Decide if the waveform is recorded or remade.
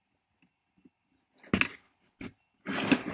recorded